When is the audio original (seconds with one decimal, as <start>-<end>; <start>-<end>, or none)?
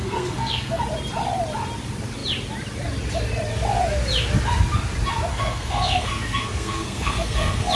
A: 0.8-5.3